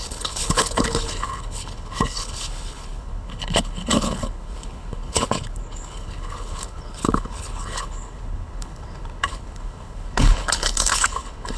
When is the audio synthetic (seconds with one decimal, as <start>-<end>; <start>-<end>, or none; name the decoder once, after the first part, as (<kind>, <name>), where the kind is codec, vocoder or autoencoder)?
0.0-11.6 (codec, HILCodec)

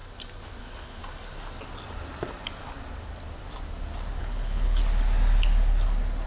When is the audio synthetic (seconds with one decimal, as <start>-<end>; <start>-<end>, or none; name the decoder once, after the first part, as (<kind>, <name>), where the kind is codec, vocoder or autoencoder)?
0.6-1.0 (codec, HILCodec); 4.2-4.8

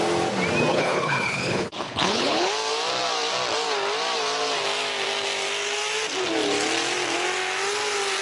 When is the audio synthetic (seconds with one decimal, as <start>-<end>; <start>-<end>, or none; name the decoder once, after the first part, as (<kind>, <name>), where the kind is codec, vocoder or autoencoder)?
0.7-2.5 (codec, HILCodec)